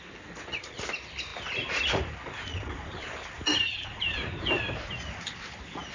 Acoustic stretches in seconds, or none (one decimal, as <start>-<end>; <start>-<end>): 0.0-5.9